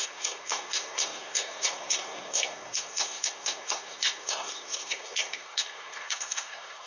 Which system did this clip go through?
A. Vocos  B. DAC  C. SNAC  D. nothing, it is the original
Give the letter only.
C